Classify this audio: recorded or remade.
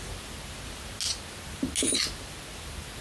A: recorded